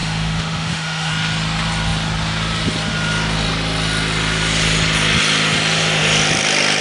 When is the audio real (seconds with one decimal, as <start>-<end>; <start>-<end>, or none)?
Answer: 1.1-6.8